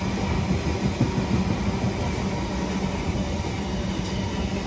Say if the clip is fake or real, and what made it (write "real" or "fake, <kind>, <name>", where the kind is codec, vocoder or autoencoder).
real